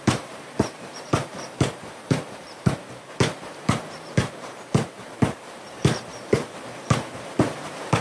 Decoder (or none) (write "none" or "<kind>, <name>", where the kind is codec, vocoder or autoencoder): vocoder, BigVGAN v2